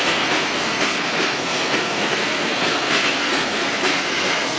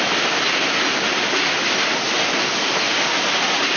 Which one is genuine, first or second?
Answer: second